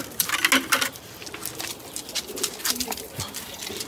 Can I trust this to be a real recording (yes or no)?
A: yes